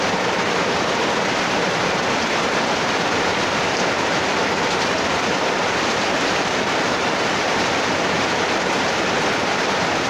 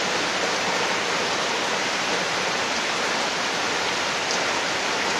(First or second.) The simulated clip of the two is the first